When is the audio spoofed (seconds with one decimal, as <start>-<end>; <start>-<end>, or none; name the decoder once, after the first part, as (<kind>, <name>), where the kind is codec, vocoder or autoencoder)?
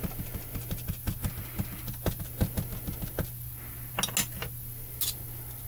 none